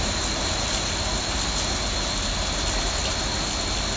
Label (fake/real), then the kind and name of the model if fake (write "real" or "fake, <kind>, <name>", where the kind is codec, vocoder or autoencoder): real